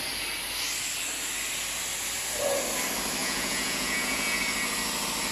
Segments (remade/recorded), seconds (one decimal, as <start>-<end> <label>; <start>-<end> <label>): 0.0-3.2 recorded; 3.2-4.4 remade; 4.4-5.3 recorded